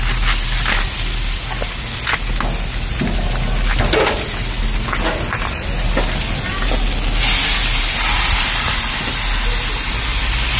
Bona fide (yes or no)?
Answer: yes